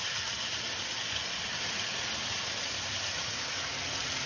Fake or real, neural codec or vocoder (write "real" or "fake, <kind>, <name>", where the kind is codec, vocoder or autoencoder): real